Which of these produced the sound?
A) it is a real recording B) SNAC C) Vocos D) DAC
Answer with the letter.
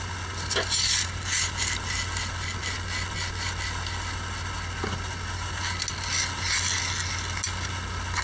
A